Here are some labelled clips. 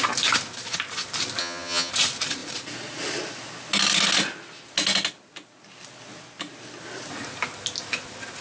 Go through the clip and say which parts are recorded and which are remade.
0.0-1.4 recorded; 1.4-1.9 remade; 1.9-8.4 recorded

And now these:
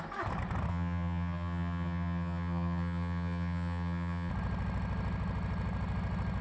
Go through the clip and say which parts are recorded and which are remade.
0.0-0.7 recorded; 0.7-4.3 remade; 4.3-6.4 recorded

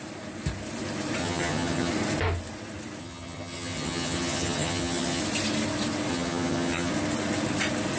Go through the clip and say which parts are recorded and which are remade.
0.0-1.2 recorded; 1.2-1.9 remade; 1.9-3.0 recorded; 3.0-5.2 remade; 5.2-6.1 recorded; 6.1-6.9 remade; 6.9-8.0 recorded

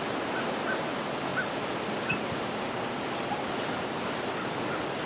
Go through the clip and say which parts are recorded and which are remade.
0.0-5.1 recorded